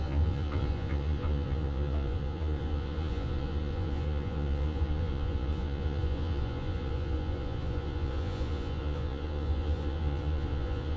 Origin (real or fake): fake